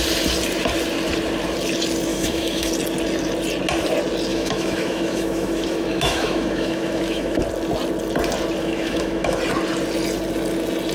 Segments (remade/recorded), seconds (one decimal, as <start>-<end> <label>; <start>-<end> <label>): 0.0-2.1 recorded; 2.1-2.7 remade; 2.7-4.3 recorded; 4.3-7.4 remade; 7.4-8.6 recorded; 8.6-9.4 remade; 9.4-10.9 recorded